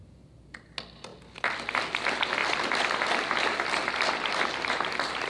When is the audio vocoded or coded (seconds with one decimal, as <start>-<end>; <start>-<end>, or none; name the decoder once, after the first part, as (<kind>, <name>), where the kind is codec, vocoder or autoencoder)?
none